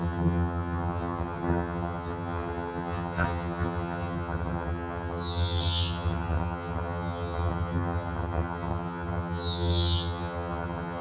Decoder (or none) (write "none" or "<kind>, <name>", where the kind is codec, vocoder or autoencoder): vocoder, HiFi-GAN